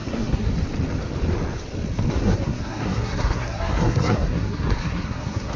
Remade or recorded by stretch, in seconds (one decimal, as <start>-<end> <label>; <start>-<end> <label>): 0.0-0.5 remade; 0.5-2.1 recorded; 2.1-5.6 remade